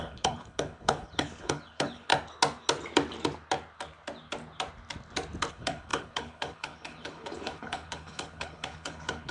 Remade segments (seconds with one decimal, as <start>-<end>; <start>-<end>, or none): 0.0-2.1; 5.5-9.3